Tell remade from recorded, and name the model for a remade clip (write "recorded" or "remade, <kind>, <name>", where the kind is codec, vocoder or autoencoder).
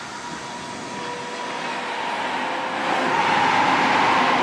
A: recorded